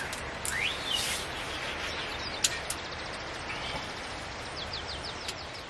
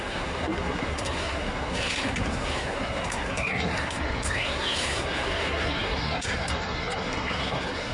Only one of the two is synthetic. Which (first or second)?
second